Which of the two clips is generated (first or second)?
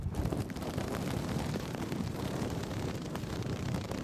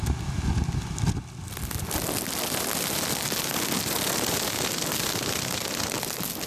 first